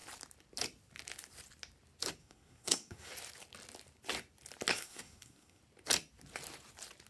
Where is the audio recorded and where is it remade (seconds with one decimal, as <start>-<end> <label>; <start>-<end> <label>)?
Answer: 0.0-2.2 recorded; 2.2-3.1 remade; 3.1-4.7 recorded; 4.7-5.6 remade; 5.6-7.1 recorded